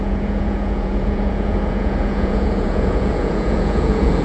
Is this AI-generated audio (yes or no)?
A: yes